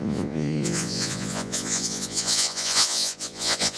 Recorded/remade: remade